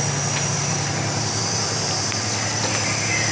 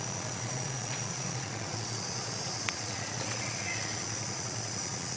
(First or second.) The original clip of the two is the first